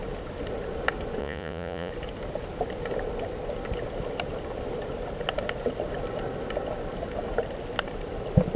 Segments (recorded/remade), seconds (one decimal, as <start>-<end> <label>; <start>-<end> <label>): 0.0-1.2 recorded; 1.2-1.9 remade; 1.9-8.6 recorded